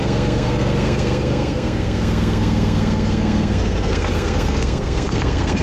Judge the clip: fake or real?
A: fake